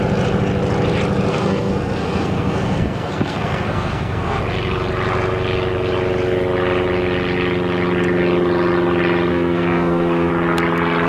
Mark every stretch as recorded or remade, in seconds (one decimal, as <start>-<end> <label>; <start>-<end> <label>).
0.0-1.3 recorded; 1.3-4.4 remade; 4.4-9.3 recorded; 9.3-10.3 remade; 10.3-11.1 recorded